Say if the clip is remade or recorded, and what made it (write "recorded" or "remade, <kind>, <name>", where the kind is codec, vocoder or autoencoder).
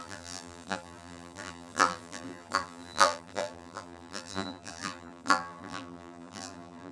remade, vocoder, BigVGAN v2